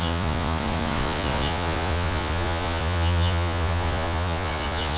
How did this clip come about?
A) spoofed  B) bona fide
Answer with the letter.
A